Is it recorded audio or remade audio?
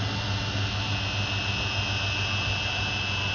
recorded